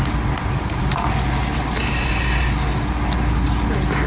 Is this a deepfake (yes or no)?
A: no